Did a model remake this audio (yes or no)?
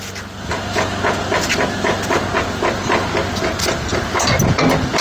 no